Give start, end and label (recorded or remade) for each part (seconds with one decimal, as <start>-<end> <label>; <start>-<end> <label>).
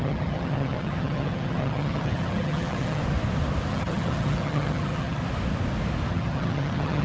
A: 0.0-3.0 remade; 3.0-3.7 recorded; 3.7-5.2 remade; 5.2-6.1 recorded; 6.1-7.0 remade